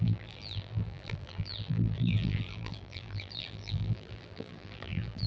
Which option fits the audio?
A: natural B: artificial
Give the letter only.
B